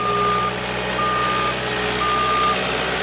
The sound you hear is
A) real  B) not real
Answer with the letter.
A